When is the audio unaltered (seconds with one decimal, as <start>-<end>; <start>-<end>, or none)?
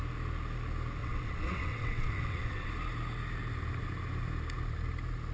0.0-1.0; 2.7-5.3